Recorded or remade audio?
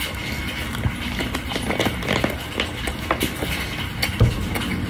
recorded